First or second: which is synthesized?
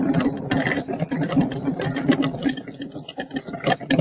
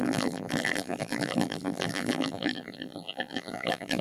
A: second